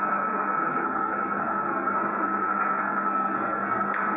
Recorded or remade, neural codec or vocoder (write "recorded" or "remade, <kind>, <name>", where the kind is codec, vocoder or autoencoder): remade, codec, SNAC